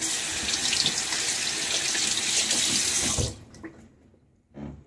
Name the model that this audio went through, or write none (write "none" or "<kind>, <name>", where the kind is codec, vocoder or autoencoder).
none